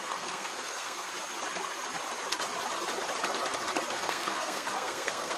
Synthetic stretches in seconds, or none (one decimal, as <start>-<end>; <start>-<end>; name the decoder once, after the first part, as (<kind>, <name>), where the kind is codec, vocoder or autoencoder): 0.0-1.1 (codec, SNAC); 3.9-5.4